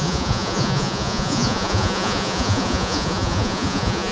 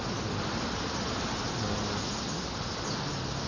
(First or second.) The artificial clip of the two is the first